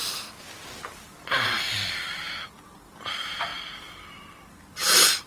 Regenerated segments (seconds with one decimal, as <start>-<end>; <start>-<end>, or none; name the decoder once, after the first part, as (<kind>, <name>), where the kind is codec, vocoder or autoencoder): 0.0-0.9 (vocoder, BigVGAN v2); 2.5-3.5; 4.5-5.3